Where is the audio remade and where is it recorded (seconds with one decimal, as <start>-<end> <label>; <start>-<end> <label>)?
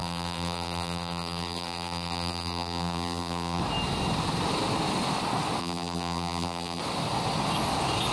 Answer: 0.0-3.6 remade; 3.6-5.6 recorded; 5.6-6.8 remade; 6.8-8.1 recorded